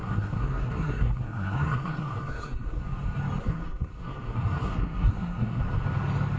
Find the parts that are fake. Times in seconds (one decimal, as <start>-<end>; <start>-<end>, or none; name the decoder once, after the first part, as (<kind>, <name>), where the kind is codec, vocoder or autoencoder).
0.0-2.8 (codec, SNAC); 3.4-5.6